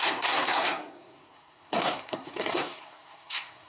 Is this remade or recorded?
remade